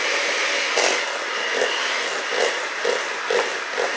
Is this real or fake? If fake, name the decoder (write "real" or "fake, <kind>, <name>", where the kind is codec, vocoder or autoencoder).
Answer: real